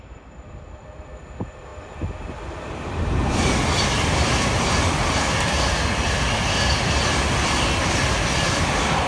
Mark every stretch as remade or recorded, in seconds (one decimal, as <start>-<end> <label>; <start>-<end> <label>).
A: 0.0-9.1 recorded

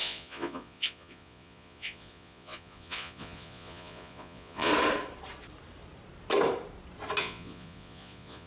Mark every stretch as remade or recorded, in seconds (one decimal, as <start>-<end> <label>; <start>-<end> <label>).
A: 0.0-4.7 remade; 4.7-7.2 recorded; 7.2-8.5 remade

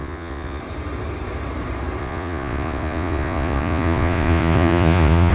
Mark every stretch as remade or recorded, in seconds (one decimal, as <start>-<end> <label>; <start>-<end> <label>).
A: 0.0-0.6 remade; 0.6-2.0 recorded; 2.0-5.3 remade